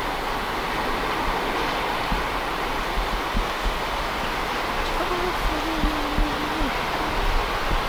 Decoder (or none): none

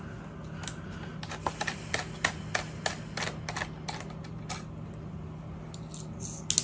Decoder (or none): none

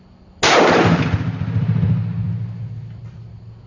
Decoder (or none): none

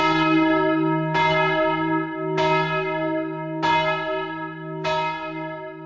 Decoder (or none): none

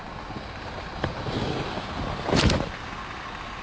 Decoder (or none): none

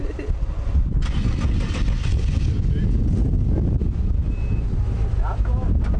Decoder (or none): none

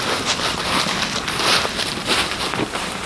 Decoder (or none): none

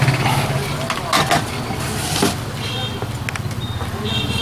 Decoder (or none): none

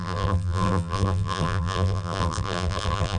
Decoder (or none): vocoder, BigVGAN v2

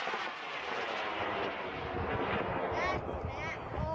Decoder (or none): none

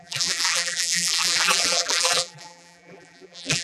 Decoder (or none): vocoder, BigVGAN v2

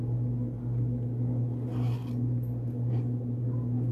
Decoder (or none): none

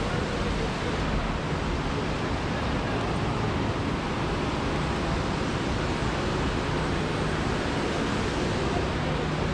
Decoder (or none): none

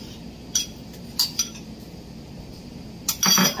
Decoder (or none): none